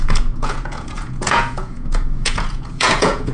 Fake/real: fake